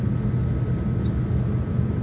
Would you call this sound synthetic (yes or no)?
no